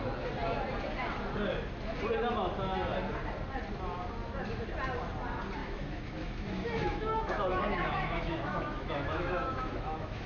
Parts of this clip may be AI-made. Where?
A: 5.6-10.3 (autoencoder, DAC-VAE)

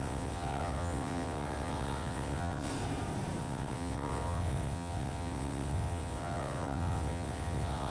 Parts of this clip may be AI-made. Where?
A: 0.0-2.7 (vocoder, WaveNeXt); 3.4-7.9

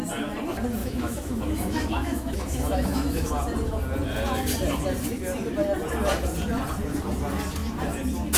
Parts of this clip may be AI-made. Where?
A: 0.8-3.3 (autoencoder, DAC-VAE)

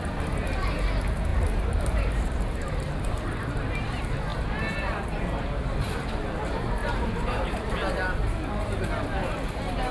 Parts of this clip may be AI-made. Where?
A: 1.3-3.5 (vocoder, BigVGAN v2); 6.8-7.7

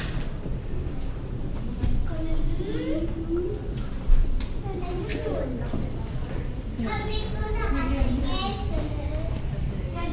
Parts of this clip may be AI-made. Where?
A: none

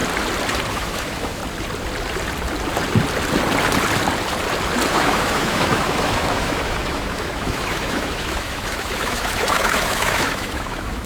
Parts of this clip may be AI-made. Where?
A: 0.7-1.4 (autoencoder, DAC-VAE); 4.9-11.1

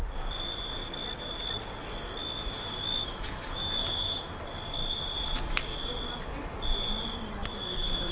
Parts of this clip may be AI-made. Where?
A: 2.2-4.4 (autoencoder, DAC-VAE); 7.4-8.1

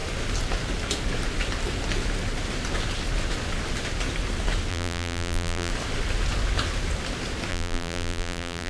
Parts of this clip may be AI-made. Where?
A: 4.7-5.7 (vocoder, BigVGAN v2); 7.5-8.7